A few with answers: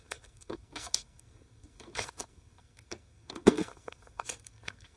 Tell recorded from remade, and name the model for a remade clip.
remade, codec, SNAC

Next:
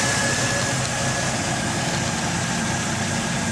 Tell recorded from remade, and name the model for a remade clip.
recorded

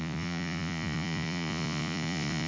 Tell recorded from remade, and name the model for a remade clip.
remade, vocoder, Vocos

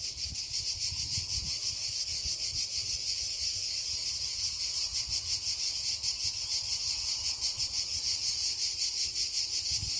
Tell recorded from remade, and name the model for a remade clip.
recorded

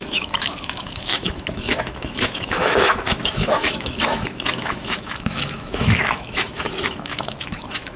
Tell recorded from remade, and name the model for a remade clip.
remade, autoencoder, DAC-VAE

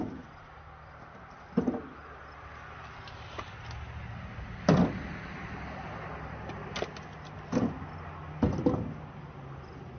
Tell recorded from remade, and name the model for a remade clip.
recorded